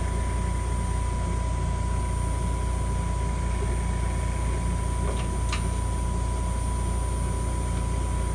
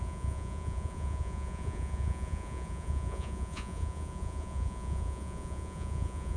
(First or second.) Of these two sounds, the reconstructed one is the second